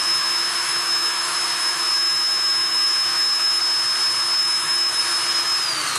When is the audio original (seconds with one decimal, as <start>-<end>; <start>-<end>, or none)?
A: 3.6-4.4; 5.0-6.0